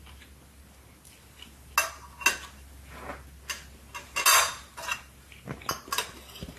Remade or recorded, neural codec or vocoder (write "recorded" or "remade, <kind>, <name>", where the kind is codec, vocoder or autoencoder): recorded